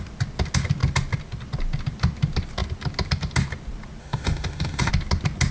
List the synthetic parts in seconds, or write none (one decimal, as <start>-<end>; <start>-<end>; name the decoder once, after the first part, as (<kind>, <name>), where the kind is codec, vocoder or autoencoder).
4.0-4.9 (autoencoder, DAC-VAE)